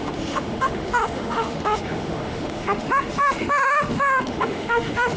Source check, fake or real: fake